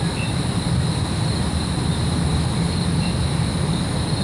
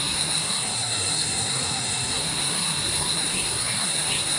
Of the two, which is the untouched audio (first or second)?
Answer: first